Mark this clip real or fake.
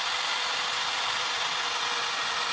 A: real